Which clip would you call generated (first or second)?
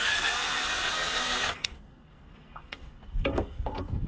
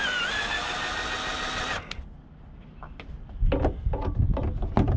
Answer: first